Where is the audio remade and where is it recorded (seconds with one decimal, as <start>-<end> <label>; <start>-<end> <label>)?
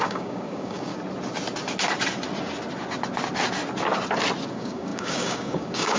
0.0-0.9 remade; 0.9-4.5 recorded; 4.5-6.0 remade